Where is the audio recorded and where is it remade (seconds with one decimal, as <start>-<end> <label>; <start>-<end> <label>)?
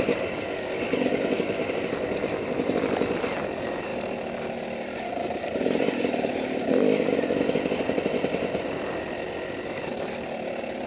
0.0-10.9 recorded